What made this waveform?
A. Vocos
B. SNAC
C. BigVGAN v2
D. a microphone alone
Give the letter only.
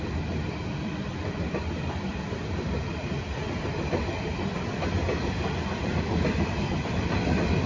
C